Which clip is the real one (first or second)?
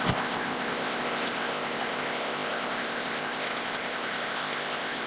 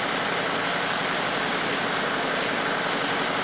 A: second